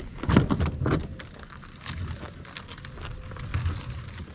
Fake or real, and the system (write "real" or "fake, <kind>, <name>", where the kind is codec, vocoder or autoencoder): real